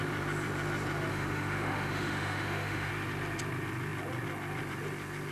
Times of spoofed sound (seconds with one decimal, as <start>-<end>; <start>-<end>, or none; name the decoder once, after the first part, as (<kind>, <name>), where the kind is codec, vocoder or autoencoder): 1.1-2.9 (autoencoder, DAC-VAE)